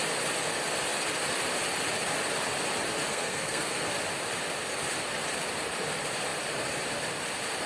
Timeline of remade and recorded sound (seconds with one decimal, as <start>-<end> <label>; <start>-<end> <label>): 0.0-3.1 recorded; 3.1-3.9 remade; 3.9-7.7 recorded